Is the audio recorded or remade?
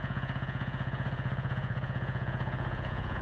remade